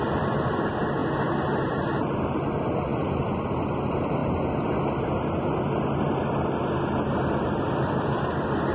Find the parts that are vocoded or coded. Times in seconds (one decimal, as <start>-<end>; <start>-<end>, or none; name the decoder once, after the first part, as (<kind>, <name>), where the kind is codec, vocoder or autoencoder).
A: none